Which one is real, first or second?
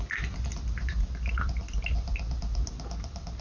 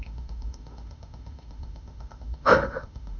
first